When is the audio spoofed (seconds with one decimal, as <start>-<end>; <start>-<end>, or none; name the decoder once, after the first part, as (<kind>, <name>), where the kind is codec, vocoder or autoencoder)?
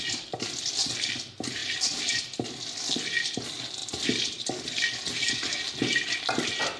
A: none